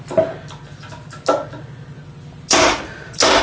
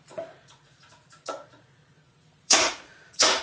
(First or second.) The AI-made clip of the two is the second